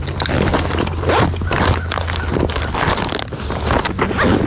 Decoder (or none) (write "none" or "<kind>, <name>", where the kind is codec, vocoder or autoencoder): none